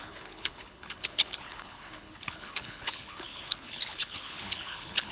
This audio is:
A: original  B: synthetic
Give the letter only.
B